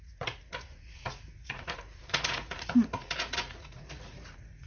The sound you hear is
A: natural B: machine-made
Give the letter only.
B